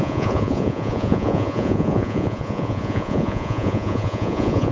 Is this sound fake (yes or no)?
yes